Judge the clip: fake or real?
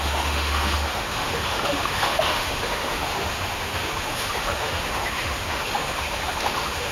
fake